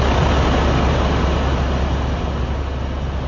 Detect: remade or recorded recorded